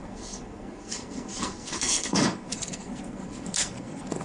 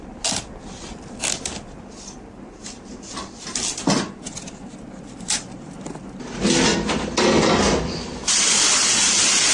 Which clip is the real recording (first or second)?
second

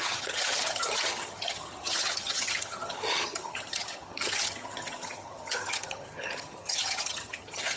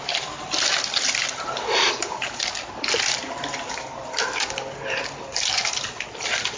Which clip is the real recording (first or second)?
second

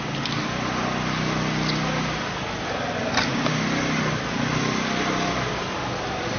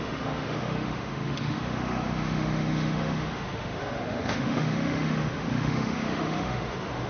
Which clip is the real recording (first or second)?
first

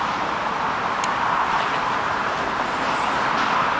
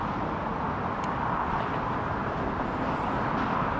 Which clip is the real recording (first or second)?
second